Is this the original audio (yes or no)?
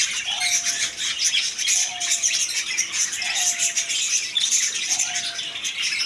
yes